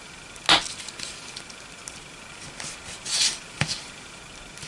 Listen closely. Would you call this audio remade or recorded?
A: recorded